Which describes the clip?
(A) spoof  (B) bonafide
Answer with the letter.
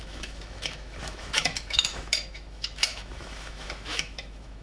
A